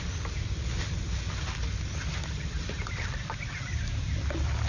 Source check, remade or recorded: recorded